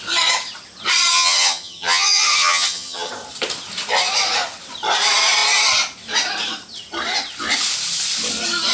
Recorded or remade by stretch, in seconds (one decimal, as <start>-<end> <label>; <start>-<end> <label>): 0.0-1.1 recorded; 1.1-3.1 remade; 3.1-8.7 recorded